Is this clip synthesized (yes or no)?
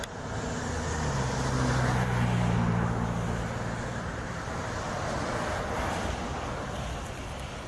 no